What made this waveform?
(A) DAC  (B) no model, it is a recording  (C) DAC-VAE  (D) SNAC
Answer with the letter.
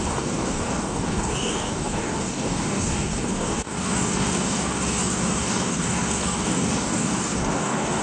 A